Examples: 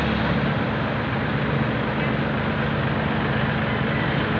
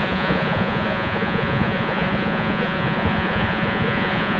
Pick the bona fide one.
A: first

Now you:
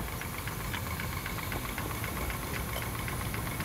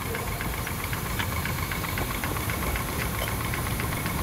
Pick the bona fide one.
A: first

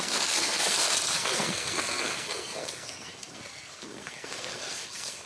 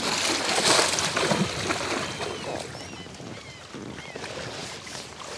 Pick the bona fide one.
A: second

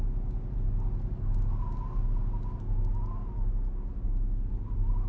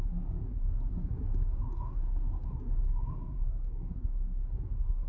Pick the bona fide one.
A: first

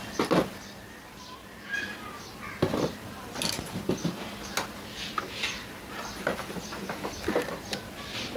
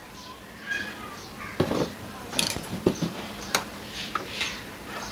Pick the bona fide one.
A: first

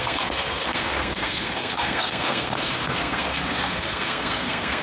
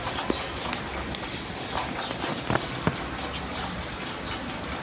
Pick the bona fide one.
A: second